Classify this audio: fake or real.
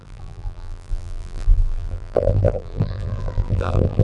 fake